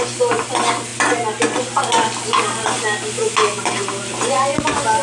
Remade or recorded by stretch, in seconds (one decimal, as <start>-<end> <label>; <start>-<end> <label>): 0.0-5.0 recorded